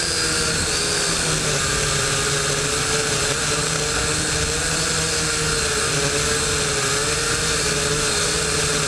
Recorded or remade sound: recorded